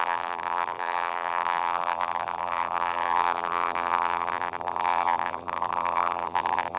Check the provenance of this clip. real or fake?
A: fake